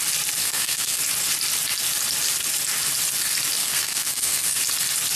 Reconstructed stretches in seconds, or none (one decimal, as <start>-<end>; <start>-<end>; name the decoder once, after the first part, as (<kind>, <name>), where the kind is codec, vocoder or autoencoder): 0.4-1.0 (codec, SNAC); 3.6-4.6

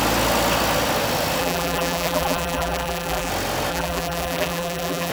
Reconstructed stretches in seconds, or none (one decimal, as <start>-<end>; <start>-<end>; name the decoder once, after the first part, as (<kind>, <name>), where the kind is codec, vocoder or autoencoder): 1.4-3.3 (vocoder, BigVGAN v2); 3.7-5.1